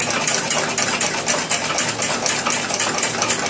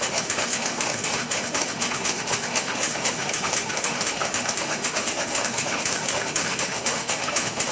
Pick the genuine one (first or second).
first